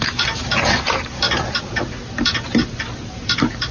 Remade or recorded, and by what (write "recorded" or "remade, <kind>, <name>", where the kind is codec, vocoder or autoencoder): remade, vocoder, BigVGAN v2